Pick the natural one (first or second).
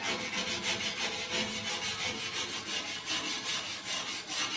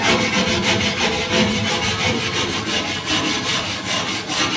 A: first